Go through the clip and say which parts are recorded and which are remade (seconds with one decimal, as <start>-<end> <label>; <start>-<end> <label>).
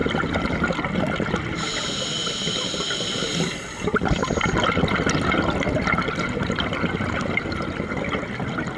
0.0-8.8 recorded